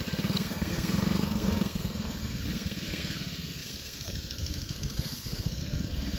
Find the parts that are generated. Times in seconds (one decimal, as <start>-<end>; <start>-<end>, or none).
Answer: 0.0-6.2